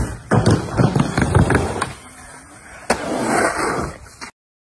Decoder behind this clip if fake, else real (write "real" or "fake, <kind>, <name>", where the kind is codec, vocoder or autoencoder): real